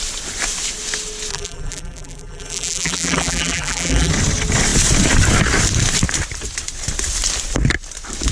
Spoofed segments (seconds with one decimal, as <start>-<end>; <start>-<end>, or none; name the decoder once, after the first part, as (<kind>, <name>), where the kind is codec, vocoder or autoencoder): 1.3-4.1 (vocoder, BigVGAN v2)